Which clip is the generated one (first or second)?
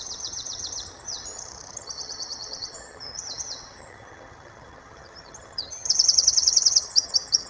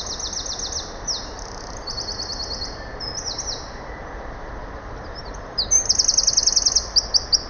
first